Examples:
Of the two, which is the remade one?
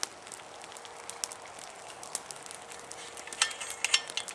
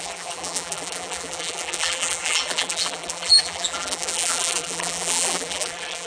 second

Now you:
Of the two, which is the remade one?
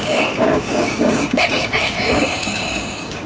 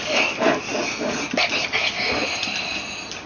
first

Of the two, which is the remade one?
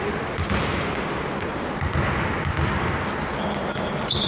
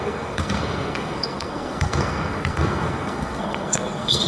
second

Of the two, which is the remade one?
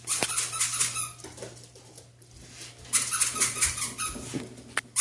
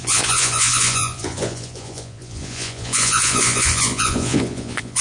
second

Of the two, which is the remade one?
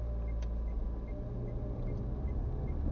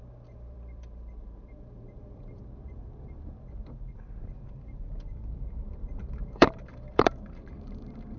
second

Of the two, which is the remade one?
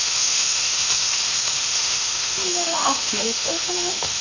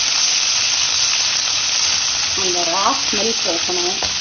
first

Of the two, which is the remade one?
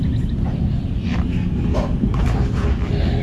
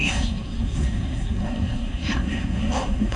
second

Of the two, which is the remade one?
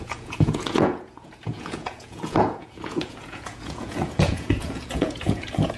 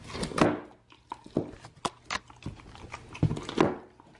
first